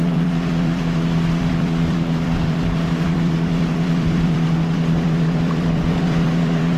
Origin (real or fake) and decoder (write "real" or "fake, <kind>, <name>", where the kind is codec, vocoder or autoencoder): fake, vocoder, BigVGAN v2